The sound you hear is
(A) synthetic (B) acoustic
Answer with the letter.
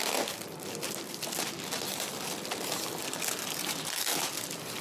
B